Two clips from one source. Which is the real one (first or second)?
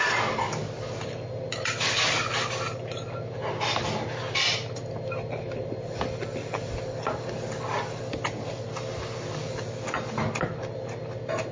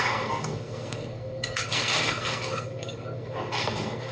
first